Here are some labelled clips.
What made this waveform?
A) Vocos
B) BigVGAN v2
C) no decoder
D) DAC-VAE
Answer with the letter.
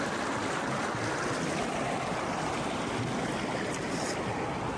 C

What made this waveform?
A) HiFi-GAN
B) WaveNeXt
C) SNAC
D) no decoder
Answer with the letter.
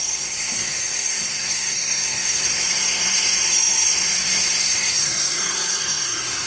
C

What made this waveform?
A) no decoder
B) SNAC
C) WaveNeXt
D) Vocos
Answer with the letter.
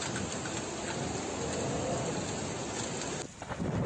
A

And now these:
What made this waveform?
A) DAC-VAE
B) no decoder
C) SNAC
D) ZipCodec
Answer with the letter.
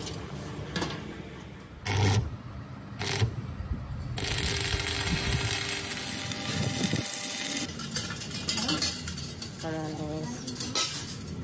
B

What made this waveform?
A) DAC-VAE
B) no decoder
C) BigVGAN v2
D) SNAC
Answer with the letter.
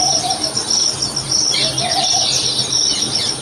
B